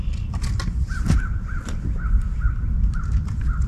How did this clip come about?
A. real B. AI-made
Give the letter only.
A